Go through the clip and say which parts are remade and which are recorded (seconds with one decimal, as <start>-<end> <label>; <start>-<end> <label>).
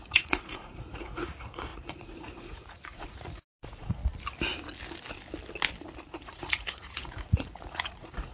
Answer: 0.0-4.0 remade; 4.0-6.1 recorded; 6.1-8.3 remade